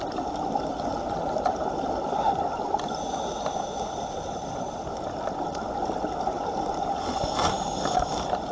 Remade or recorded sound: recorded